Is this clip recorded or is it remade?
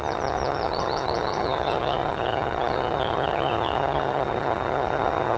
remade